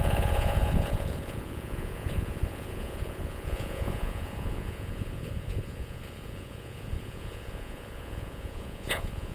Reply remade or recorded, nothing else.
remade